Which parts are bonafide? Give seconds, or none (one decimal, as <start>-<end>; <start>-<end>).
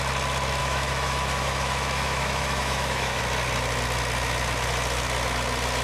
0.0-0.6; 3.2-5.8